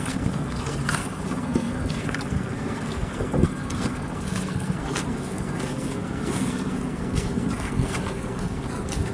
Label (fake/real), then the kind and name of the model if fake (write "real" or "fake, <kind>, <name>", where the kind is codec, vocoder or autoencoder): fake, codec, SNAC